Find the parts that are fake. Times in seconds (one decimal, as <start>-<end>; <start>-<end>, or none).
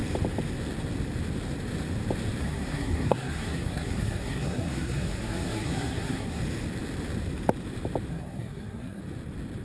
2.4-6.4; 8.1-9.0